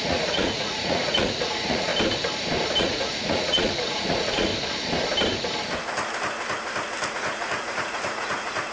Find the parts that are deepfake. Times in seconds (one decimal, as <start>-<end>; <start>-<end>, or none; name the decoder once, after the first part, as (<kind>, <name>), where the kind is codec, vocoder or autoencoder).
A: 0.0-1.9 (vocoder, Vocos); 2.8-4.5; 7.1-8.7

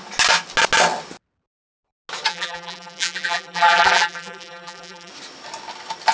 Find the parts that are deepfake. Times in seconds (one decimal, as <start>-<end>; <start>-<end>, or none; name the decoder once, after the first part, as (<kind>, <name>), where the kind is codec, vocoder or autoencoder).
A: 2.3-5.1 (vocoder, BigVGAN v2)

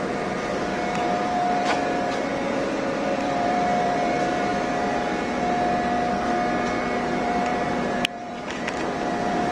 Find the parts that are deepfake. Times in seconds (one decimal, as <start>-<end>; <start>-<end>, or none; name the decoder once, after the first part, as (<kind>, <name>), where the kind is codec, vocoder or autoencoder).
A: 0.0-4.5 (vocoder, BigVGAN v2); 7.1-9.5

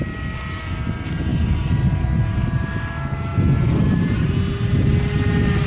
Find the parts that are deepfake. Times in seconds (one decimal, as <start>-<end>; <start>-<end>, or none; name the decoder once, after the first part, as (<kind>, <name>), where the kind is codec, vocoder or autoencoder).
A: none